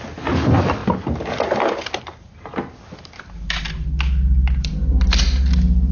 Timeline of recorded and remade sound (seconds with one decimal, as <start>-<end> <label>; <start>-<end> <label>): 0.0-5.9 recorded

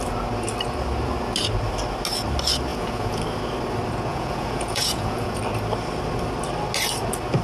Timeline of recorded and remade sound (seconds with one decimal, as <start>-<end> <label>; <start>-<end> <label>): 0.0-2.7 recorded; 2.7-3.2 remade; 3.2-4.1 recorded; 4.1-5.4 remade; 5.4-7.4 recorded

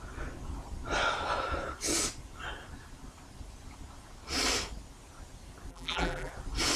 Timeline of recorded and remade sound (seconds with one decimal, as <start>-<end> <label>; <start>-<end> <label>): 0.0-5.7 recorded; 5.7-6.3 remade; 6.3-6.8 recorded

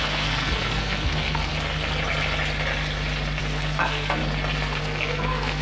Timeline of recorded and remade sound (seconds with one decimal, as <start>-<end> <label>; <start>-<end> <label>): 0.0-1.5 remade; 1.5-3.4 recorded; 3.4-4.2 remade; 4.2-4.8 recorded; 4.8-5.6 remade